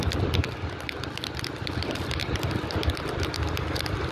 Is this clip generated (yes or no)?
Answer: no